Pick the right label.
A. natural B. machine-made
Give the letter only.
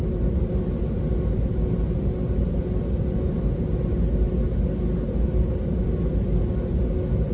A